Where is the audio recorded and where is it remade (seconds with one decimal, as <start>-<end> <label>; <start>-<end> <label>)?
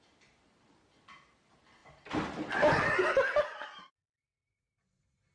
0.0-5.3 recorded